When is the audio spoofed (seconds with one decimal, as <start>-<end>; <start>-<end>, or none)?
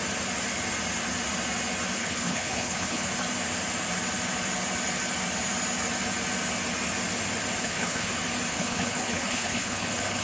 2.0-3.1; 7.6-8.1; 8.5-10.2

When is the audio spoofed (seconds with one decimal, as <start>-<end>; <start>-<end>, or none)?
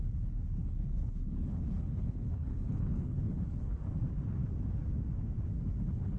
0.0-3.7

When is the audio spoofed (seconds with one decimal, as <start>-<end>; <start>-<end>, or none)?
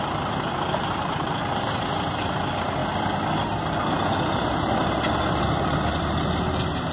none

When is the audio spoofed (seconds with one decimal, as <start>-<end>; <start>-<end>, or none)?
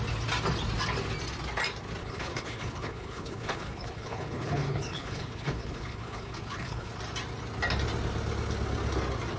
2.0-6.9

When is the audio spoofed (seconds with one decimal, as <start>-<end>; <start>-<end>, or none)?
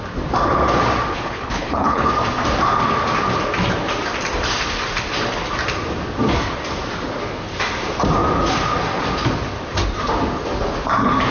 1.1-2.1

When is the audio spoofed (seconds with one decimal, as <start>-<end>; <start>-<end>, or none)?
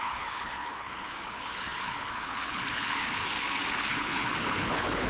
0.0-3.2; 3.9-5.1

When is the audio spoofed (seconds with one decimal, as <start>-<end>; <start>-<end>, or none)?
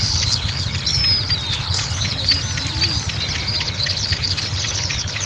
0.0-1.0; 1.5-2.3; 3.6-5.3